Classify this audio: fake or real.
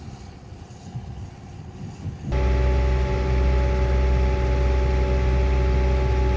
real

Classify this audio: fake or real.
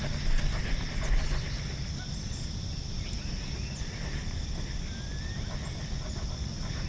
real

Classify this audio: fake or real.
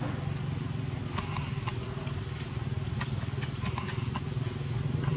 real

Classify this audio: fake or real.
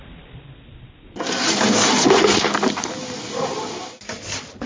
real